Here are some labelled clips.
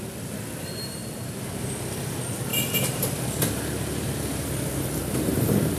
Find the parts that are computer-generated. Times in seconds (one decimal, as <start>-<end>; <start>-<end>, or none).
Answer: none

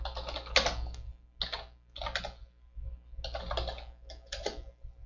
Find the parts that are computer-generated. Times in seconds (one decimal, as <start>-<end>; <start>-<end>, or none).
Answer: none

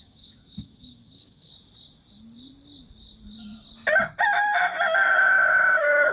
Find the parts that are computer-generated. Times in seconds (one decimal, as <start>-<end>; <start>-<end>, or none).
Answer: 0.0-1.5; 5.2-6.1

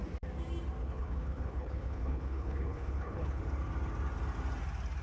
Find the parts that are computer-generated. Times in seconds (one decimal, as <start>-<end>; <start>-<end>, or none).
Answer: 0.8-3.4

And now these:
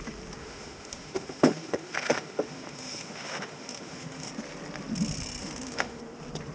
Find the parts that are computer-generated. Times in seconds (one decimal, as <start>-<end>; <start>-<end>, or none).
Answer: 0.4-4.3; 5.4-6.0